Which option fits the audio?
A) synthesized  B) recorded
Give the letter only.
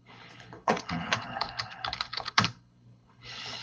A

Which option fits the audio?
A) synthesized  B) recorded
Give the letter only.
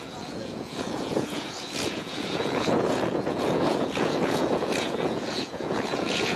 A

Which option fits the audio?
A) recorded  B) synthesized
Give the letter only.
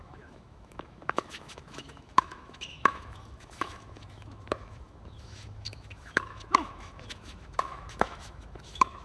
B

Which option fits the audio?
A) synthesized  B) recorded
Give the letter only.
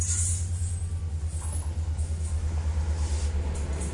B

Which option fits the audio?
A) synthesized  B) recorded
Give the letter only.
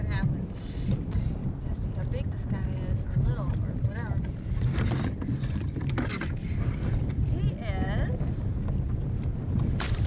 B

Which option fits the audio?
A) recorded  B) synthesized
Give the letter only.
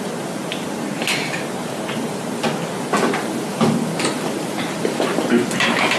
A